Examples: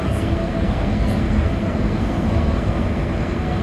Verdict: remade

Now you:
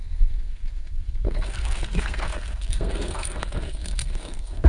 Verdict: remade